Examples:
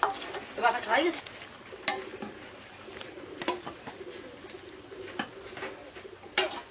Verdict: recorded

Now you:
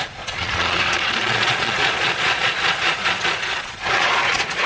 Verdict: remade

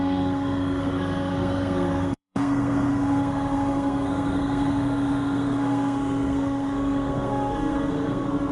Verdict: remade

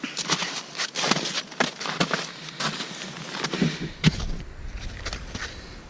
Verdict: recorded